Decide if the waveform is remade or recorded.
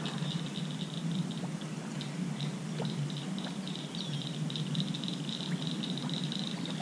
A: recorded